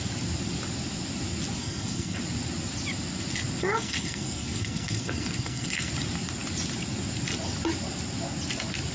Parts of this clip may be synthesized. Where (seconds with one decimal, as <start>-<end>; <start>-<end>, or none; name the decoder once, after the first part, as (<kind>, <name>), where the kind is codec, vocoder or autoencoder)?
1.6-2.2 (codec, SNAC); 3.6-5.9